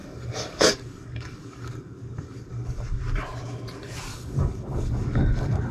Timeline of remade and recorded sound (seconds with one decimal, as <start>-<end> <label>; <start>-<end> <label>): 0.0-3.0 remade; 3.0-4.1 recorded; 4.1-5.7 remade